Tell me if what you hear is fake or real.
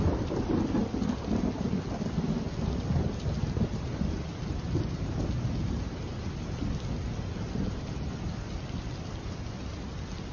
real